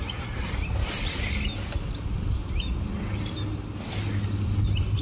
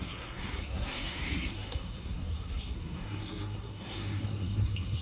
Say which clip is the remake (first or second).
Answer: second